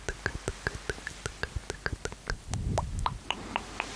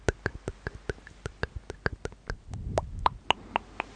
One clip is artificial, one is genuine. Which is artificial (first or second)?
first